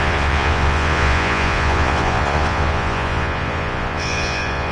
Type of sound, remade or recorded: remade